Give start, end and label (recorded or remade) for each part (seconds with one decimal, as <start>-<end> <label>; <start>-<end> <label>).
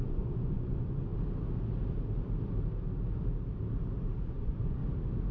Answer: 0.0-1.1 remade; 1.1-4.3 recorded; 4.3-4.8 remade; 4.8-5.3 recorded